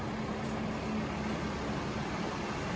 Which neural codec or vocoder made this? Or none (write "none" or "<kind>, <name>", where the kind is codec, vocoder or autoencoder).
none